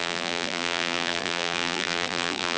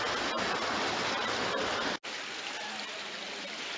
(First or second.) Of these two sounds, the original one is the second